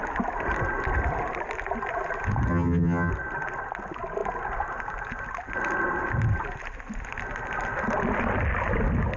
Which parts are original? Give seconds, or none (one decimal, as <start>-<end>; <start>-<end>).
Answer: 0.0-2.5; 3.1-9.2